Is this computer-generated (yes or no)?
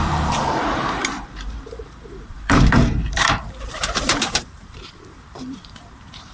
yes